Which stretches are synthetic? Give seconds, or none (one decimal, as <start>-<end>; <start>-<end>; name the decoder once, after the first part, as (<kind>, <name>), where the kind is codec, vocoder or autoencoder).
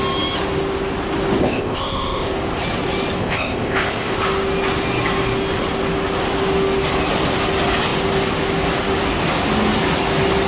1.4-2.3 (codec, ZipCodec); 3.2-4.2